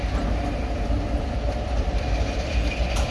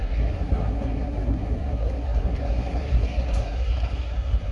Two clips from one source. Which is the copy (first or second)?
second